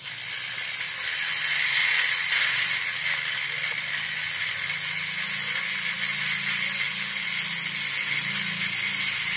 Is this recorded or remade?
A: recorded